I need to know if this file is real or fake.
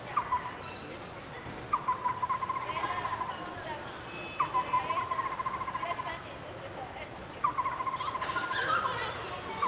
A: real